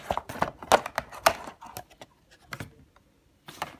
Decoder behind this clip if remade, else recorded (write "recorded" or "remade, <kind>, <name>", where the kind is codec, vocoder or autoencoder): recorded